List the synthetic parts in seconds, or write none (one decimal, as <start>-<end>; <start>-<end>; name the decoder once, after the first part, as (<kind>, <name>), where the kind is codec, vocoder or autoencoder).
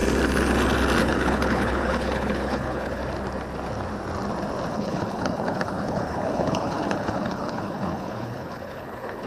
1.0-3.0 (codec, HILCodec); 4.7-9.3